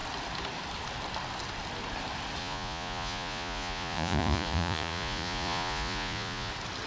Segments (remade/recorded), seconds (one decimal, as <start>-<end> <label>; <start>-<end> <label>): 0.0-2.4 recorded; 2.4-6.5 remade; 6.5-6.9 recorded